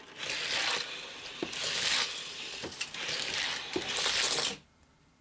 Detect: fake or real real